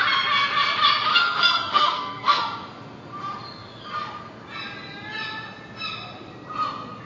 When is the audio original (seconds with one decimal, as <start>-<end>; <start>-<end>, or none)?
0.0-1.1; 2.4-7.1

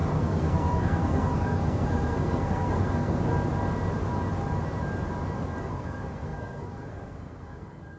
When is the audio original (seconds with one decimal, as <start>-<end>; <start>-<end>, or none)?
3.3-5.6